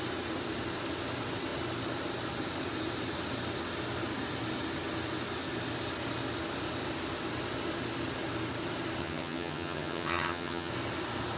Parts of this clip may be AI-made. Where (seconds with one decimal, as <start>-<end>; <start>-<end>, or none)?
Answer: 9.0-10.7